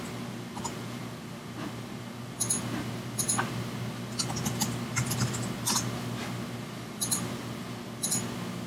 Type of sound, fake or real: real